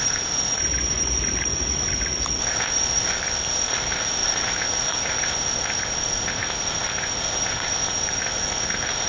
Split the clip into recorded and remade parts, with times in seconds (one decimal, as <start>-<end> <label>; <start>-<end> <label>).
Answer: 0.0-0.6 remade; 0.6-2.4 recorded; 2.4-9.1 remade